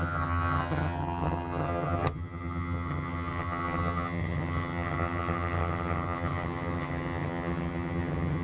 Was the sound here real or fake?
fake